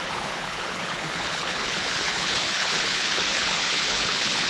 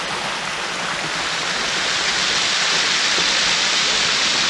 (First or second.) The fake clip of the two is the first